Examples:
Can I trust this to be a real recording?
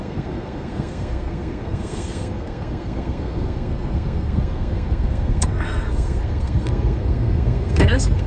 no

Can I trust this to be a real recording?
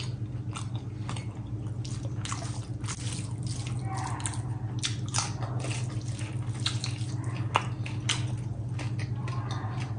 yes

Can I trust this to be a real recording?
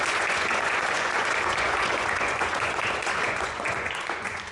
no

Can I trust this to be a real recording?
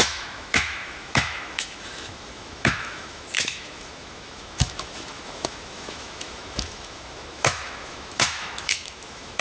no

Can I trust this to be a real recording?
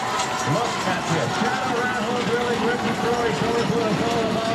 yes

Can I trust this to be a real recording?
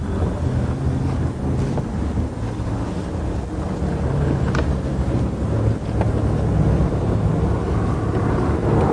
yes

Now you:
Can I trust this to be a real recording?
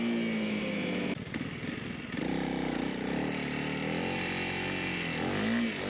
yes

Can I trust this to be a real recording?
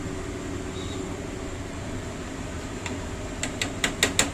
yes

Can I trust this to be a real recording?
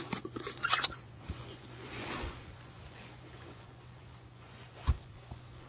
no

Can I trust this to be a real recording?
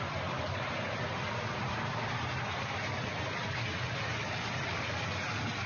yes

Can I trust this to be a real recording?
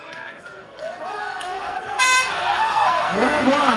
no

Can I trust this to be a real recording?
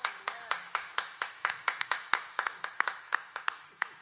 no